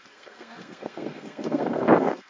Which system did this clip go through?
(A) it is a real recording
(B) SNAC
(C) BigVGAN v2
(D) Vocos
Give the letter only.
B